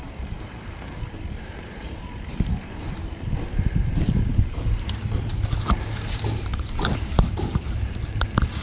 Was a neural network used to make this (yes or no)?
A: yes